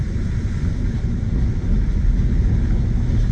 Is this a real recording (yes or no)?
yes